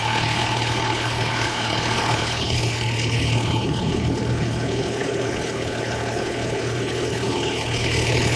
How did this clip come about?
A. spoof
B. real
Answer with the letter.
A